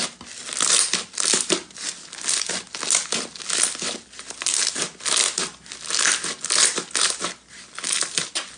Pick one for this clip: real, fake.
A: real